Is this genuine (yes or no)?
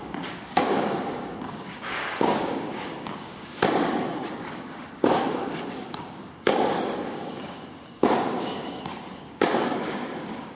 no